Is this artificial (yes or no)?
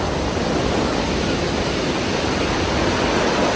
no